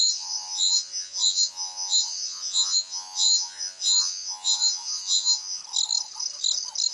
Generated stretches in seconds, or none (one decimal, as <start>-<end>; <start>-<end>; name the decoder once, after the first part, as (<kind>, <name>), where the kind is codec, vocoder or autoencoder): 0.0-5.6 (vocoder, Vocos)

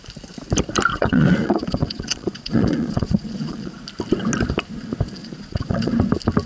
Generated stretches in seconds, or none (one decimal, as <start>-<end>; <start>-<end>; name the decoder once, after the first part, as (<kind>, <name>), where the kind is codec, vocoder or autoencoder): 0.9-3.8 (vocoder, Vocos); 5.2-5.9

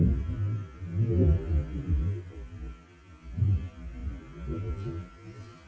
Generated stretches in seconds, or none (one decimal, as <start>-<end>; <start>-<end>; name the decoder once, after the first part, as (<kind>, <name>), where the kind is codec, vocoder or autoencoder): none

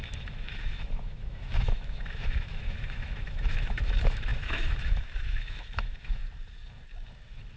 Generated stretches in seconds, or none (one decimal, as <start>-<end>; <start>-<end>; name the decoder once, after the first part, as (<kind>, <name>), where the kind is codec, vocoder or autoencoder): 0.0-6.2 (autoencoder, DAC-VAE)